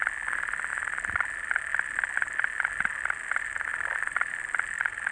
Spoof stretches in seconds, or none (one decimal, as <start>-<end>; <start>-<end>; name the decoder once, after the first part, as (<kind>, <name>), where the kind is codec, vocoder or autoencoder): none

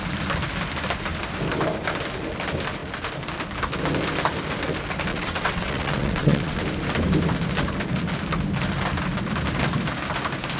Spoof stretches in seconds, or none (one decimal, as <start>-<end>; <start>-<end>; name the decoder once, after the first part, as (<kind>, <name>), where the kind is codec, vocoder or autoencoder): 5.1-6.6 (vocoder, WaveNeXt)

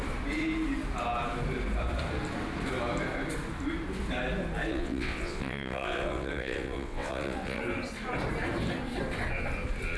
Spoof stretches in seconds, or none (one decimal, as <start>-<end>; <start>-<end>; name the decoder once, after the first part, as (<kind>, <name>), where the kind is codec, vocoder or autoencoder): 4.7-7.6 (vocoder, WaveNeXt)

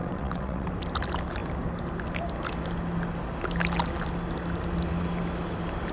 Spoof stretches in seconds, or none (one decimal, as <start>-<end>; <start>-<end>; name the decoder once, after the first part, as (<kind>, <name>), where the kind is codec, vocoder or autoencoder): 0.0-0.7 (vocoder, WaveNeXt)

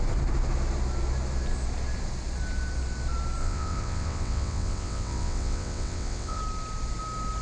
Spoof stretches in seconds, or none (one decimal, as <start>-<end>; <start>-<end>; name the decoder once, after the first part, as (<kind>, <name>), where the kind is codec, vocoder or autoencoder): 3.4-6.4 (vocoder, WaveNeXt)

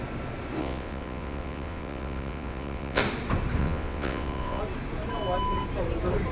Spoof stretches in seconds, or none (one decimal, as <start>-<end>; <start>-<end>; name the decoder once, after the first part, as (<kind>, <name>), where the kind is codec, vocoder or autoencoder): 0.6-3.0 (vocoder, WaveNeXt); 3.6-4.6

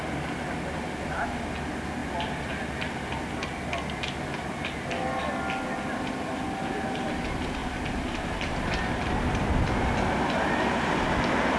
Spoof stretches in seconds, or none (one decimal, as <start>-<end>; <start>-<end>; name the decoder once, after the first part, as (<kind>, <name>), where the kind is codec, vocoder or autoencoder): none

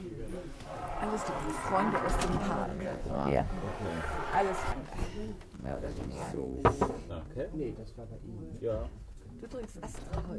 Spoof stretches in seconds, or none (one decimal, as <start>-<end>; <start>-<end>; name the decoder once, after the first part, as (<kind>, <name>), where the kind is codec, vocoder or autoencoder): 2.7-3.4 (vocoder, WaveNeXt); 5.6-6.6